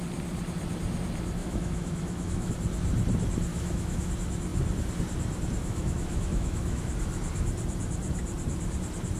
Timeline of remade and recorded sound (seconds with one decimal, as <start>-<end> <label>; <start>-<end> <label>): 0.0-1.4 recorded; 1.4-2.5 remade; 2.5-3.5 recorded; 3.5-4.1 remade; 4.1-5.6 recorded; 5.6-6.9 remade; 6.9-9.2 recorded